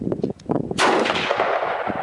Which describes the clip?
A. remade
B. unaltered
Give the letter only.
A